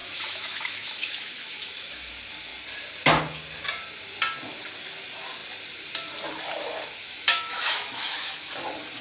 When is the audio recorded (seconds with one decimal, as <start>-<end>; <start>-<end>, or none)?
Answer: 2.1-7.0; 8.5-9.0